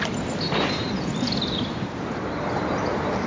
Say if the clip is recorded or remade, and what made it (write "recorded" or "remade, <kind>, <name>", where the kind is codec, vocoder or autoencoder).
recorded